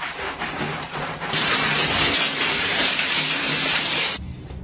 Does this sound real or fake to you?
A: fake